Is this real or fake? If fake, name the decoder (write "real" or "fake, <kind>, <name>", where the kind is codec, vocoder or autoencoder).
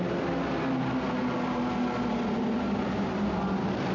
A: real